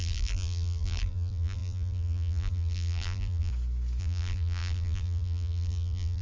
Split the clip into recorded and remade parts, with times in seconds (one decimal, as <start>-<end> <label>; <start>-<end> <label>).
0.0-3.5 remade; 3.5-4.0 recorded; 4.0-6.2 remade